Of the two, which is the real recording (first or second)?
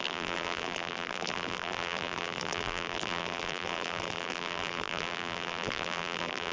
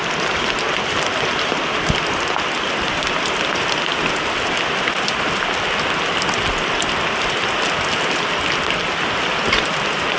second